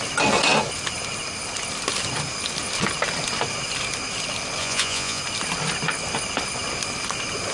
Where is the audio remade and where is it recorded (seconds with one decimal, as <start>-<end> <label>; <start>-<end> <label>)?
0.0-4.6 recorded; 4.6-5.2 remade; 5.2-7.5 recorded